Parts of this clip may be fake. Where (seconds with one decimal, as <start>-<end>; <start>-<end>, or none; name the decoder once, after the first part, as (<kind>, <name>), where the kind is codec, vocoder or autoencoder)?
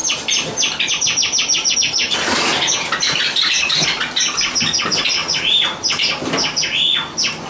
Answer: 0.0-0.9 (vocoder, BigVGAN v2); 2.5-4.0; 5.2-6.2